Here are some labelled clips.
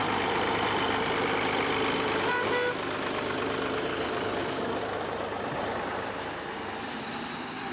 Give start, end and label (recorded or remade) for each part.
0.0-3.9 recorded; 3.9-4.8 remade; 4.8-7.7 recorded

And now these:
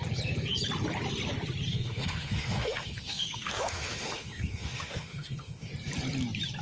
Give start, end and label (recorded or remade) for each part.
0.0-1.7 recorded; 1.7-5.7 remade; 5.7-6.6 recorded

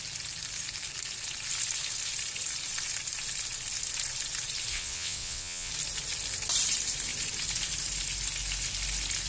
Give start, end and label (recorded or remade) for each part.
0.0-4.7 recorded; 4.7-5.7 remade; 5.7-9.3 recorded

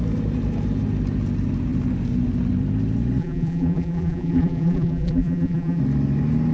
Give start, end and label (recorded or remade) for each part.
0.0-3.2 recorded; 3.2-5.8 remade; 5.8-6.5 recorded

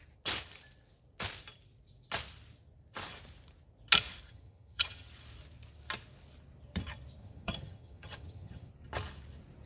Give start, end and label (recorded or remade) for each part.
0.0-4.3 recorded; 4.3-5.1 remade; 5.1-7.2 recorded; 7.2-8.7 remade; 8.7-9.7 recorded

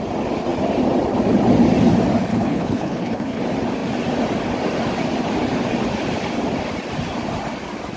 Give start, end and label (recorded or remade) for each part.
0.0-2.3 recorded; 2.3-3.4 remade; 3.4-8.0 recorded